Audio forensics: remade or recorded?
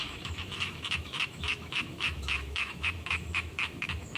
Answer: remade